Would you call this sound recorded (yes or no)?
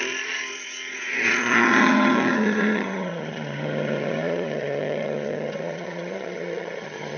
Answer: no